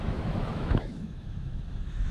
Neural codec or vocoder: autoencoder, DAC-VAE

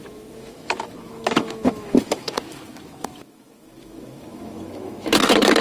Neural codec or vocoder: autoencoder, DAC-VAE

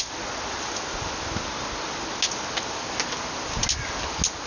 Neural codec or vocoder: none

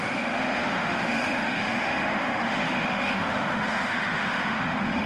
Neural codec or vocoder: autoencoder, DAC-VAE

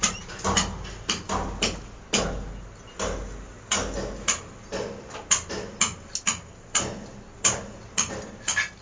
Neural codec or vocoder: none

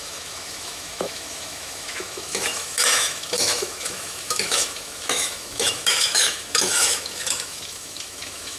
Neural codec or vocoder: autoencoder, DAC-VAE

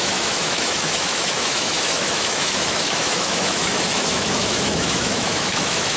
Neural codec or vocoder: autoencoder, DAC-VAE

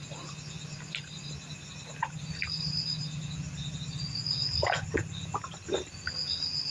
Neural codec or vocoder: none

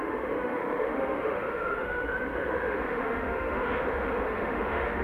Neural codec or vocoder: autoencoder, DAC-VAE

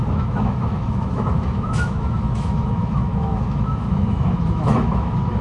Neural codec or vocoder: autoencoder, DAC-VAE